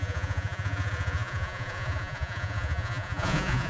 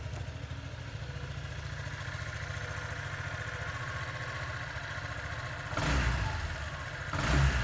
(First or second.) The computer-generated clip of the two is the first